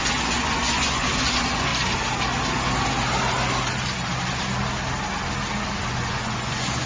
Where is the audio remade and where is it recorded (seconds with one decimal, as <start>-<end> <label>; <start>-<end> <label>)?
0.0-1.7 remade; 1.7-5.8 recorded; 5.8-6.9 remade